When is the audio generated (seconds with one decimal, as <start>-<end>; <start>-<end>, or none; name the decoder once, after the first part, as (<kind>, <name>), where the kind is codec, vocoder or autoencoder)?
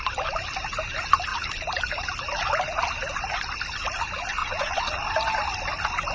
4.4-5.0 (vocoder, Vocos)